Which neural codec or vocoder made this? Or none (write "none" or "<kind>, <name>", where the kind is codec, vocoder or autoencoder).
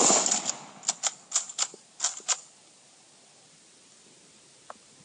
none